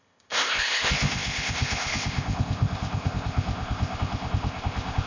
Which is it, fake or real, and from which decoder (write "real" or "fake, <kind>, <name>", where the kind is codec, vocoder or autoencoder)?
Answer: fake, codec, ZipCodec